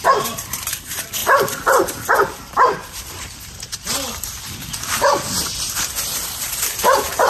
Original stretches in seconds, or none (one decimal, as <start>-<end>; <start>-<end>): none